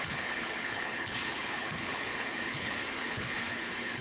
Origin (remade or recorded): remade